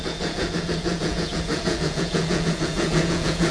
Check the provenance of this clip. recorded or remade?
remade